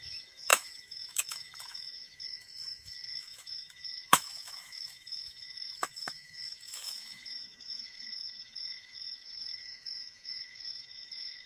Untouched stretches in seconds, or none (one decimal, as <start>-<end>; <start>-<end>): none